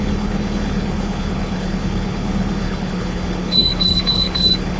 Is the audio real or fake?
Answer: fake